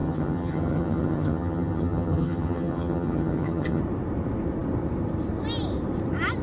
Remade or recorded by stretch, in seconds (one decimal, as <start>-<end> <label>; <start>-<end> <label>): 0.0-3.8 remade; 3.8-6.4 recorded

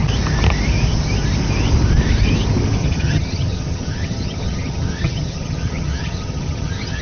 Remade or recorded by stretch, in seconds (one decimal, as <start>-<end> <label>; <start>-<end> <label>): 0.0-2.8 recorded; 2.8-7.0 remade

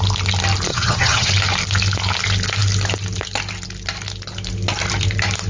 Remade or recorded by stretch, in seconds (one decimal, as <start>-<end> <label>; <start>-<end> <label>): 0.0-0.7 recorded; 0.7-1.3 remade; 1.3-5.5 recorded

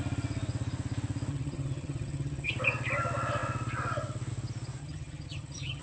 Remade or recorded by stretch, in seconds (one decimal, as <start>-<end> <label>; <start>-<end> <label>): 0.0-1.3 recorded; 1.3-2.5 remade; 2.5-4.8 recorded; 4.8-5.8 remade